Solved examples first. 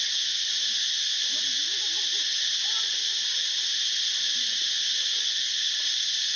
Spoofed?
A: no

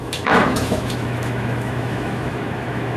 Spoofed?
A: yes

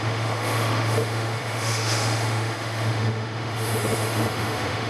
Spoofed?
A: yes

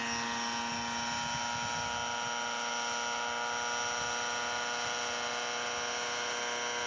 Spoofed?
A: no